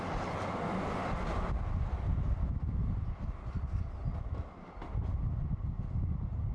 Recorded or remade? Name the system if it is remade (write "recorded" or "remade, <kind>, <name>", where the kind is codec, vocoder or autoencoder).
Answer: recorded